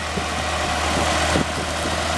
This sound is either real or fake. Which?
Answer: real